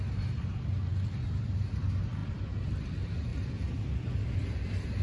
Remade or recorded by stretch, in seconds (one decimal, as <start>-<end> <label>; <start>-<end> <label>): 0.0-0.9 recorded; 0.9-1.8 remade; 1.8-3.3 recorded; 3.3-4.1 remade; 4.1-5.0 recorded